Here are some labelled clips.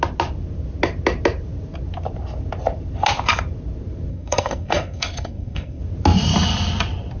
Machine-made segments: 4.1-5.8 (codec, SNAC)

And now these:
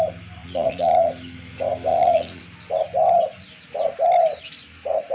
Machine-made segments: 0.4-1.1 (vocoder, Vocos); 1.9-2.4

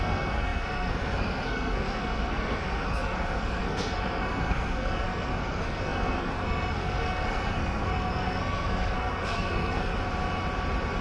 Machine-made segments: 0.0-9.9 (codec, SNAC)